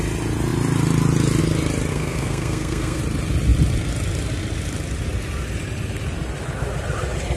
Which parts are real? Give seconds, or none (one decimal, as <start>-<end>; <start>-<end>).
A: 0.0-1.9; 3.0-7.4